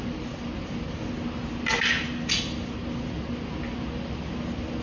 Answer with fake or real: real